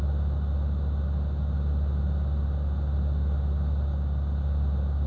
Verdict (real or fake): real